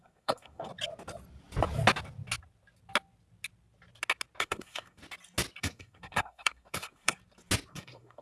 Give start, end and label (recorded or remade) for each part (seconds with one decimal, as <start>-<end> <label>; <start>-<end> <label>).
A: 0.0-0.7 remade; 0.7-4.4 recorded; 4.4-5.0 remade; 5.0-5.6 recorded; 5.6-7.2 remade; 7.2-7.7 recorded; 7.7-8.2 remade